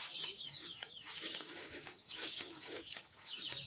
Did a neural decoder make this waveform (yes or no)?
yes